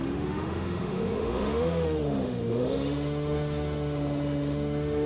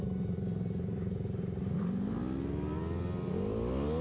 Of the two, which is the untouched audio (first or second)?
second